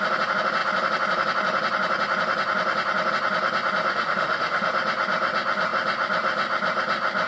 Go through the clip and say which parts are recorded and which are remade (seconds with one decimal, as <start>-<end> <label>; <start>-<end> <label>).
0.0-3.9 recorded; 3.9-4.7 remade; 4.7-7.3 recorded